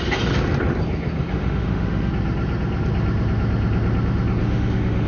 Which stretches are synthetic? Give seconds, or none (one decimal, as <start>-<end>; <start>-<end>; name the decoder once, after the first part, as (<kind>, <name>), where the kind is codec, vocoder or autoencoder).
1.3-2.1 (autoencoder, DAC-VAE); 4.4-5.1